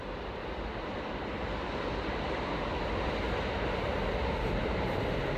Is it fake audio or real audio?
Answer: real